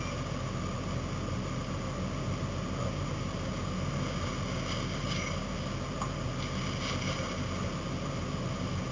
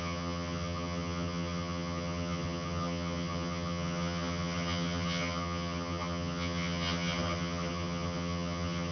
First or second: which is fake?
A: second